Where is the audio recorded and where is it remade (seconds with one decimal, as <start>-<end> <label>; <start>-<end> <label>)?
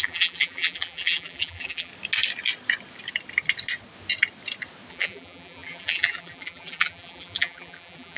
0.0-1.9 remade; 1.9-4.9 recorded; 4.9-8.2 remade